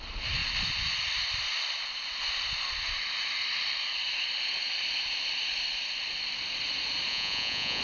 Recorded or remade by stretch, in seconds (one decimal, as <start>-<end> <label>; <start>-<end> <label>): 0.0-7.1 recorded; 7.1-7.8 remade